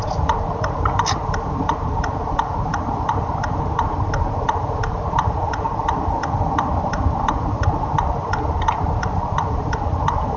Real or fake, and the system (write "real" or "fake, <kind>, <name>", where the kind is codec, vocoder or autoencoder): fake, vocoder, BigVGAN v2